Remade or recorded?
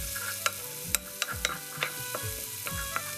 recorded